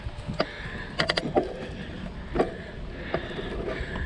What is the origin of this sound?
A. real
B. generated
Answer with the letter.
A